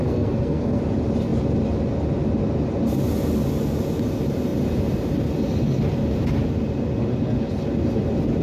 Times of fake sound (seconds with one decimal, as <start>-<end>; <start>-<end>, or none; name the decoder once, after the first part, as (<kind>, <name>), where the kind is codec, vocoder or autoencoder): 0.0-0.8 (codec, SNAC)